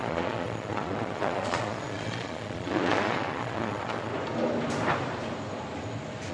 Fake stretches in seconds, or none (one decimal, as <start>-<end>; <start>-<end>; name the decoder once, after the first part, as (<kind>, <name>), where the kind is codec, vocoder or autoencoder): 0.0-4.1 (vocoder, Vocos)